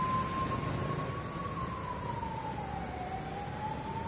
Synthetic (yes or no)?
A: no